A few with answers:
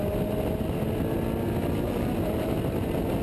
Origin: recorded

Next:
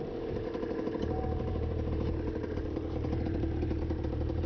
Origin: remade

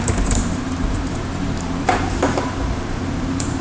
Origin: remade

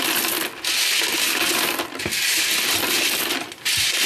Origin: recorded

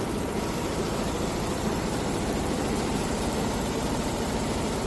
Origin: remade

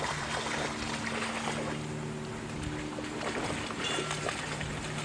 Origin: recorded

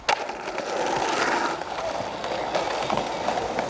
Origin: recorded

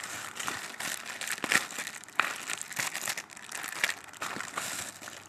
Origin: recorded